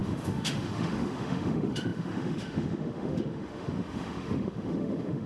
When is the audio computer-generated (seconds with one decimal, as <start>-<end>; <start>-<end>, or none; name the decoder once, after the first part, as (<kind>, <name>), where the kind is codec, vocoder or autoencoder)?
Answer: 0.0-5.3 (autoencoder, DAC-VAE)